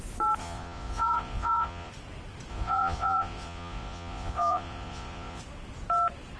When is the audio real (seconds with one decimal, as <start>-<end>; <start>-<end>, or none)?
0.0-0.4; 1.9-2.5; 5.4-6.4